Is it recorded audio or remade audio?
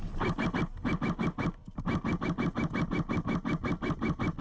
recorded